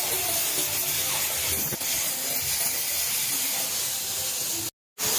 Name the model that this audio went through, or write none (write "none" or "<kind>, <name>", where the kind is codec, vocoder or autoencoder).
none